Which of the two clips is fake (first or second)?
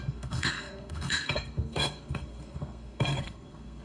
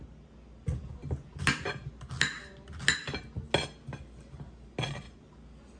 first